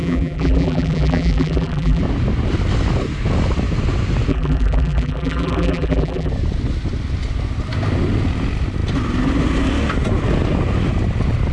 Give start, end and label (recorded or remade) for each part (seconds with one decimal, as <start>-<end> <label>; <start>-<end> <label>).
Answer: 0.0-2.0 remade; 2.0-4.3 recorded; 4.3-6.3 remade; 6.3-11.5 recorded

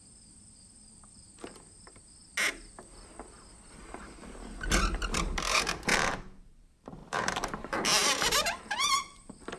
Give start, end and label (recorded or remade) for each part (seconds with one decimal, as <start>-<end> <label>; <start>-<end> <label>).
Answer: 0.0-2.2 remade; 2.2-3.7 recorded; 3.7-5.9 remade; 5.9-6.4 recorded; 6.4-9.6 remade

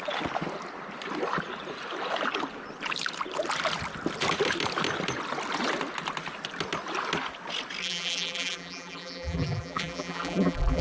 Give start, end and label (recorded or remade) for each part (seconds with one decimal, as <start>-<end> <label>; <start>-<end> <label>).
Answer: 0.0-7.8 recorded; 7.8-10.8 remade